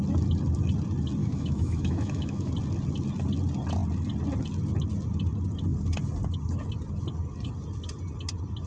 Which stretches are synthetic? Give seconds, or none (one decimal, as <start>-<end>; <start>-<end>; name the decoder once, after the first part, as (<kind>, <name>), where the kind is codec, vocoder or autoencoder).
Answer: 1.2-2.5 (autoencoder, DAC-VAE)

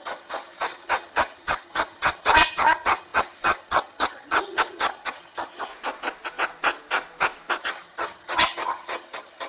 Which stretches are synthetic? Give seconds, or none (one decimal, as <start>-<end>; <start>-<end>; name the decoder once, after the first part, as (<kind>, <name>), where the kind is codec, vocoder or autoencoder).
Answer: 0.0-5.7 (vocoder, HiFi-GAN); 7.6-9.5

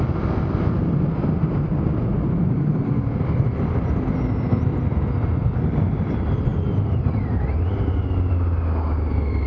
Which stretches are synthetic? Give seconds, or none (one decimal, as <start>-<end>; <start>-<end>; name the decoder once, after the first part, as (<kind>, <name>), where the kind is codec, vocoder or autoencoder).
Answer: none